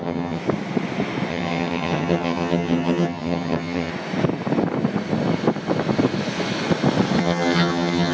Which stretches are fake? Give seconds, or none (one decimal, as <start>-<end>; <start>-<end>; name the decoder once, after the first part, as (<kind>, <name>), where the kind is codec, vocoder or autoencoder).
0.0-0.4 (vocoder, HiFi-GAN); 1.3-3.9; 7.2-8.1